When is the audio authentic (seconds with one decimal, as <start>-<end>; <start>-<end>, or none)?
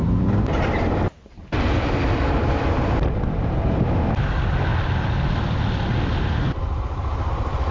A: 3.7-7.7